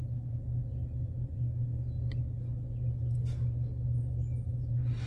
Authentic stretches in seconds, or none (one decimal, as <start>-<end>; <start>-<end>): 0.0-5.1